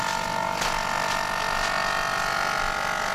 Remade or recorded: recorded